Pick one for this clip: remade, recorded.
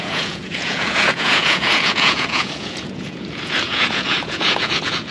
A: remade